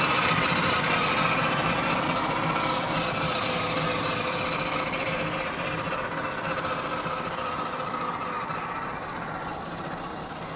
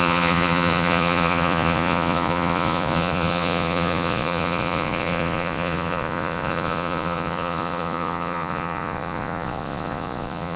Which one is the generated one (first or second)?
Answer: second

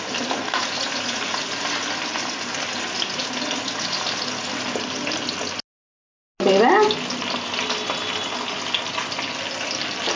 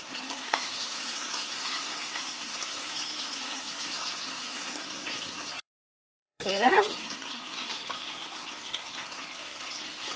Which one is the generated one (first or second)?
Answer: second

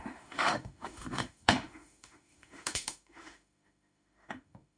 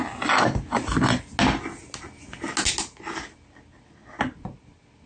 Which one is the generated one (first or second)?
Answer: first